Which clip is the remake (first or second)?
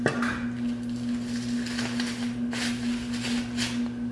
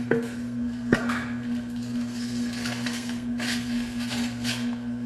second